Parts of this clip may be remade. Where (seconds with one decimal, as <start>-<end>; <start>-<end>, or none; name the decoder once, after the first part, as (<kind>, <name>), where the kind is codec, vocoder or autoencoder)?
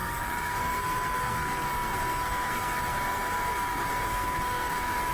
0.0-5.1 (codec, SNAC)